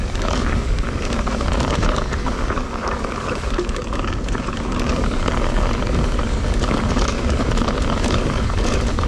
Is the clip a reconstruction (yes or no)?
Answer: yes